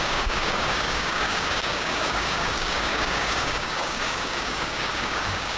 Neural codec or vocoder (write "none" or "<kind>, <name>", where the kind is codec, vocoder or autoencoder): codec, DAC